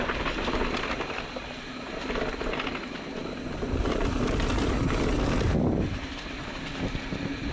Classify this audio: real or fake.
real